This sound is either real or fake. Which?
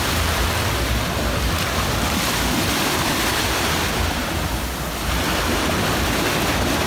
real